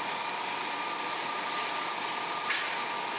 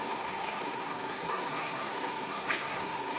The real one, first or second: first